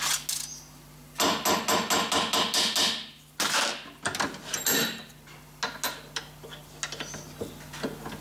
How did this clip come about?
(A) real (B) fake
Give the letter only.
A